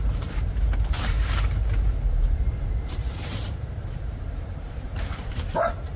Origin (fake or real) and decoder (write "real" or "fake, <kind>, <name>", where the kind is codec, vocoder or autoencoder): fake, vocoder, BigVGAN v2